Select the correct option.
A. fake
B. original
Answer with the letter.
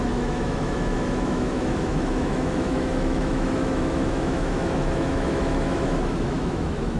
A